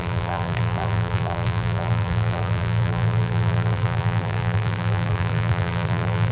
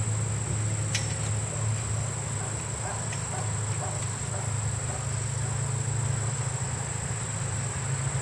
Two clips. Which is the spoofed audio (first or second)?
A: first